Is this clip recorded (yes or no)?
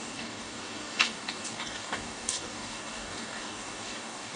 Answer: no